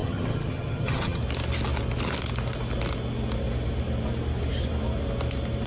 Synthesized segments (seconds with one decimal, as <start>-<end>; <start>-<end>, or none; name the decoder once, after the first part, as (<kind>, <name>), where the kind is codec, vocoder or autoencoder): 0.0-1.2 (vocoder, HiFi-GAN)